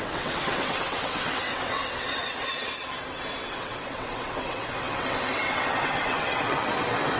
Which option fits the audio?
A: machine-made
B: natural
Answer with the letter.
A